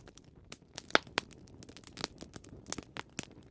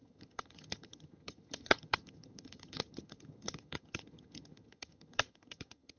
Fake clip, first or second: second